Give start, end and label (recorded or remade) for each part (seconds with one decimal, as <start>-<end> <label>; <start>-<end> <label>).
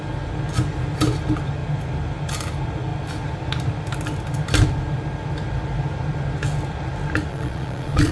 0.0-7.3 recorded; 7.3-8.1 remade